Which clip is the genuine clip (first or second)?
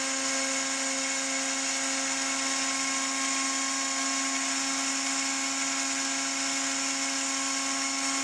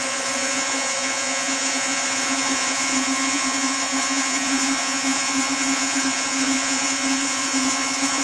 first